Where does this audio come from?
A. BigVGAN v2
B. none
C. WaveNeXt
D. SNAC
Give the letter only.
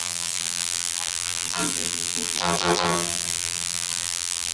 A